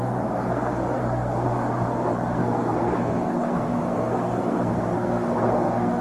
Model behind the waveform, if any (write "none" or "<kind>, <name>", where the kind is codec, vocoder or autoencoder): codec, SNAC